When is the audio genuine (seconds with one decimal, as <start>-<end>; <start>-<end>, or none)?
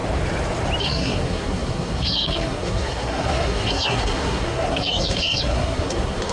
0.0-0.8